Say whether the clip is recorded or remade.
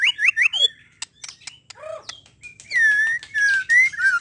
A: recorded